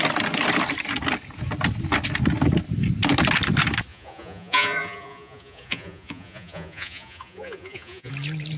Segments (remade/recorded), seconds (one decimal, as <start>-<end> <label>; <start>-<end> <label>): 0.0-3.9 recorded; 3.9-8.1 remade; 8.1-8.6 recorded